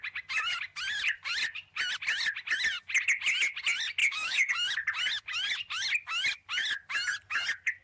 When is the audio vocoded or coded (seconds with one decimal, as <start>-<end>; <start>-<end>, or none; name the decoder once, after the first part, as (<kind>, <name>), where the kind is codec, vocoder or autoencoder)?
4.0-4.5 (codec, DAC)